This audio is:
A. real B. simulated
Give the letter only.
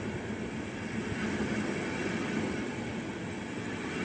A